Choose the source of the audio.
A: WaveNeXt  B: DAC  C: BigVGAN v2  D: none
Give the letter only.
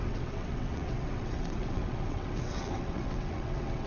A